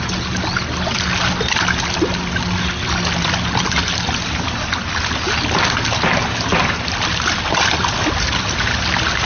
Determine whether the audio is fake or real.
real